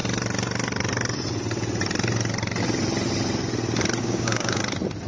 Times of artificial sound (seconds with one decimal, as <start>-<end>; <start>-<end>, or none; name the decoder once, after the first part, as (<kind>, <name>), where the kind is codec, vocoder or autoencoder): 4.0-4.6 (codec, DAC)

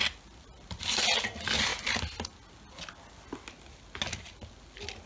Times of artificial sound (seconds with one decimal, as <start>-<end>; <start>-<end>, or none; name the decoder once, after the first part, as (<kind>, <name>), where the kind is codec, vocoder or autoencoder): none

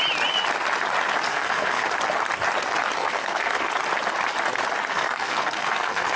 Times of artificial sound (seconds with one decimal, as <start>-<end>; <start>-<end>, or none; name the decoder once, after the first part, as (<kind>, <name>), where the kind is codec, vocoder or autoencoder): 1.3-1.9 (codec, SNAC); 3.0-3.7; 4.9-6.2

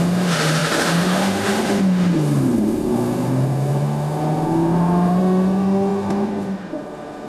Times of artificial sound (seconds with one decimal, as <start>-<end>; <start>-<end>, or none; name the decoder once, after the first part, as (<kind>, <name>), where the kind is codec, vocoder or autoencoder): 0.0-7.3 (autoencoder, DAC-VAE)

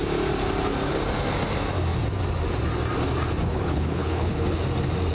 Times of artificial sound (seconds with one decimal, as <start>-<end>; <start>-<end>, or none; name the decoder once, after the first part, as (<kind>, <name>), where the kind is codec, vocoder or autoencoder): 3.5-4.6 (codec, HILCodec)

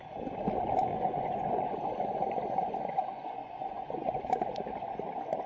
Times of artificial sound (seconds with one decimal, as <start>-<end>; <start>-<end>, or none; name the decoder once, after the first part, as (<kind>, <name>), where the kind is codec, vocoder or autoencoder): 0.9-4.2 (vocoder, Vocos)

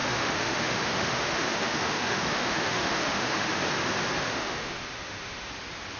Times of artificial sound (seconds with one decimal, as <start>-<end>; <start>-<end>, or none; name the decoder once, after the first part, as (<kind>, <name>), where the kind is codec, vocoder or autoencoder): 0.0-3.6 (autoencoder, DAC-VAE); 4.2-5.5